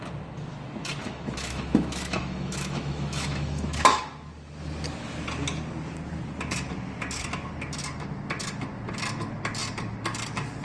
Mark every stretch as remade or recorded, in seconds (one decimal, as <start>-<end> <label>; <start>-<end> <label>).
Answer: 0.0-1.0 recorded; 1.0-4.0 remade; 4.0-10.6 recorded